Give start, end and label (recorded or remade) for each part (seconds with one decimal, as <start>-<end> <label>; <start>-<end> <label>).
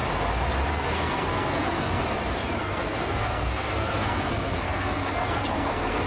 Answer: 0.0-0.7 recorded; 0.7-2.0 remade; 2.0-2.6 recorded; 2.6-6.1 remade